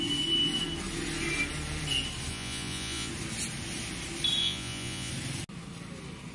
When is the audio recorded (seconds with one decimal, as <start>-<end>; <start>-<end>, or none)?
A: 0.0-2.3; 3.1-4.4; 5.1-6.3